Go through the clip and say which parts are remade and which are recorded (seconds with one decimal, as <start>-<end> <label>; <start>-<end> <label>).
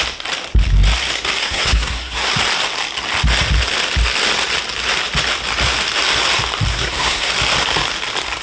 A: 0.0-1.4 recorded; 1.4-2.3 remade; 2.3-6.7 recorded; 6.7-7.3 remade; 7.3-8.4 recorded